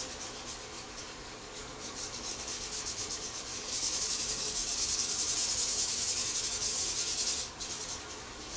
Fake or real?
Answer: fake